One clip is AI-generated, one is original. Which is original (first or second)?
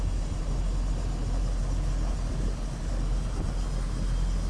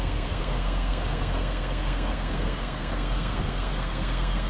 first